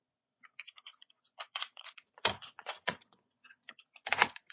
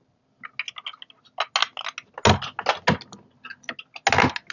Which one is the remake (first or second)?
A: first